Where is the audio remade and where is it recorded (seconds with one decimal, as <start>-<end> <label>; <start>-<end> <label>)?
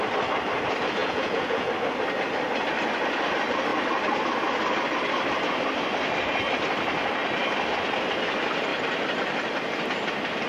0.0-1.0 recorded; 1.0-1.7 remade; 1.7-10.5 recorded